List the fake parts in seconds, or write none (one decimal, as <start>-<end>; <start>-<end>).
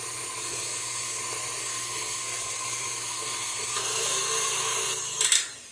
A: 0.4-1.2; 1.6-5.0